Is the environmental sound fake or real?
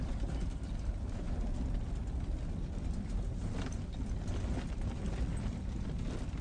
real